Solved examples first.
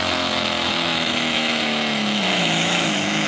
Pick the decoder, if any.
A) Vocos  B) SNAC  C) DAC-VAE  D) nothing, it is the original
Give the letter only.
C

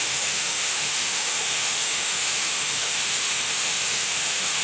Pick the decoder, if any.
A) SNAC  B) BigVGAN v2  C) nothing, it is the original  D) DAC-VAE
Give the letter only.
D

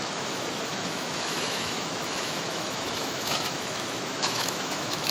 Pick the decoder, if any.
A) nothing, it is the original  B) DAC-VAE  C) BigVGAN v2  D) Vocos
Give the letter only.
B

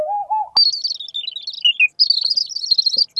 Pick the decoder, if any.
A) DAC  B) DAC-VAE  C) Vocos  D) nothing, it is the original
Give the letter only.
D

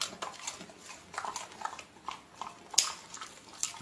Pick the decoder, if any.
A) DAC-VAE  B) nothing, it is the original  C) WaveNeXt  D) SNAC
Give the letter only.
B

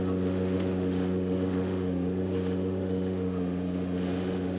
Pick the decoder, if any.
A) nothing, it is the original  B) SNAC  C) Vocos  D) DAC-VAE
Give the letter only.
D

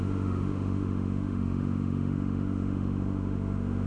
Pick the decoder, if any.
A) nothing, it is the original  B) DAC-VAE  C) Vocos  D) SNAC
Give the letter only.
B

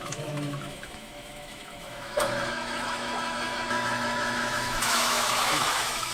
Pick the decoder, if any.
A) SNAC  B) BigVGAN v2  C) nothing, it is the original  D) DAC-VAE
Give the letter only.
D